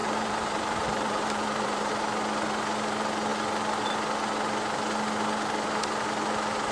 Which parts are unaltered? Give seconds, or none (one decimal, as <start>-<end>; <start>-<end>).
1.9-6.7